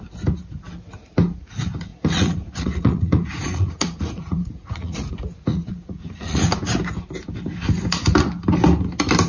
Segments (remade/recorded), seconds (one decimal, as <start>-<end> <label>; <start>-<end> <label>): 0.0-1.9 recorded; 1.9-5.1 remade; 5.1-5.5 recorded; 5.5-6.5 remade; 6.5-9.3 recorded